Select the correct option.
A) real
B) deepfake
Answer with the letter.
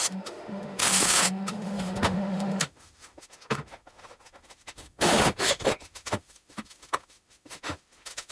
B